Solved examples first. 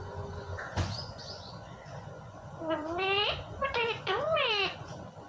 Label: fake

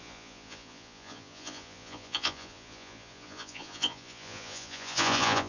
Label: fake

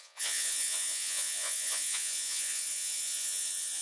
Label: fake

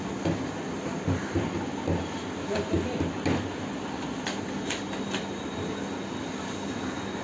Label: real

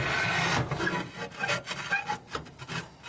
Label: real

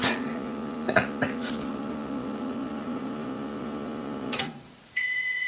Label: fake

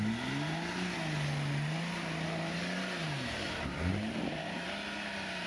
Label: real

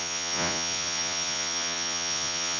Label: fake